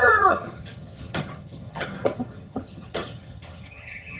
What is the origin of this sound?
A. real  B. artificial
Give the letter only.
B